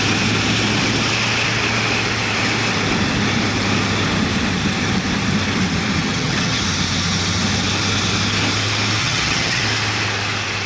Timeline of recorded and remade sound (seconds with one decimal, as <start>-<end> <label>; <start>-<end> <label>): 0.0-6.0 recorded; 6.0-6.6 remade; 6.6-9.0 recorded; 9.0-9.6 remade; 9.6-10.7 recorded